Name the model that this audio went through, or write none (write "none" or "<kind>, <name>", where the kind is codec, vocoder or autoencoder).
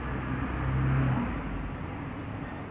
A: none